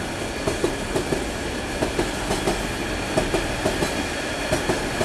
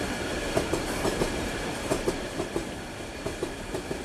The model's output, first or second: second